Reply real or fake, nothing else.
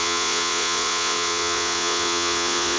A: fake